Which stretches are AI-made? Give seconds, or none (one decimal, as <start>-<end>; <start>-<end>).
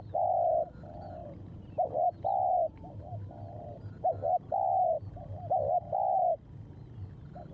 none